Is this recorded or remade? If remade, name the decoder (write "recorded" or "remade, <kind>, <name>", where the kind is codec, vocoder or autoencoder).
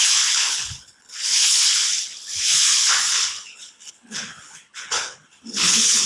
remade, codec, HILCodec